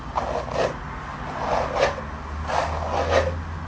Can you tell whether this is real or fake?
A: real